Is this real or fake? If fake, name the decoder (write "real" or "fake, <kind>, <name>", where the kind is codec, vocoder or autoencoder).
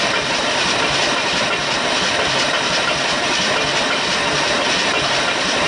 fake, vocoder, BigVGAN v2